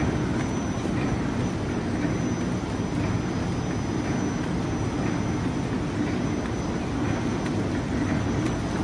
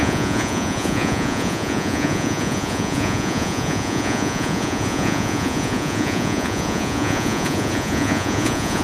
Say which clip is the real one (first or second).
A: first